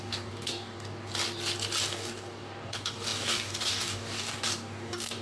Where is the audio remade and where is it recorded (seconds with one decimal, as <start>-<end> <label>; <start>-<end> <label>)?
0.0-1.1 remade; 1.1-1.9 recorded; 1.9-5.2 remade